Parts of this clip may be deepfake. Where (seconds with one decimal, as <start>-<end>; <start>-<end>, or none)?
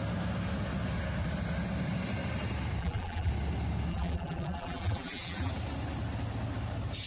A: 2.8-3.3; 3.9-5.5